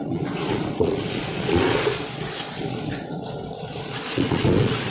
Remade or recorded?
remade